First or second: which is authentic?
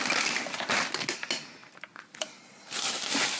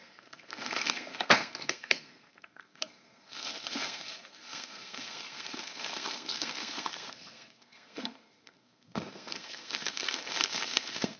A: first